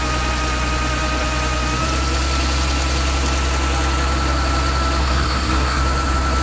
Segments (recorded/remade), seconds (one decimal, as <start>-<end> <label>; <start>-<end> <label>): 0.0-5.0 recorded; 5.0-5.8 remade; 5.8-6.4 recorded

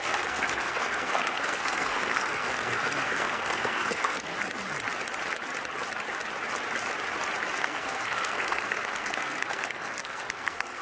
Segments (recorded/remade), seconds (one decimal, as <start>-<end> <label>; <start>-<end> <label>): 0.0-4.3 remade; 4.3-7.6 recorded; 7.6-10.8 remade

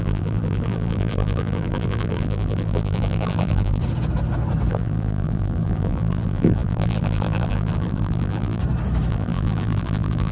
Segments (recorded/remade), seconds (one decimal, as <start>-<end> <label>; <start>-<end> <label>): 0.0-3.8 remade; 3.8-4.7 recorded; 4.7-8.6 remade; 8.6-9.1 recorded; 9.1-10.3 remade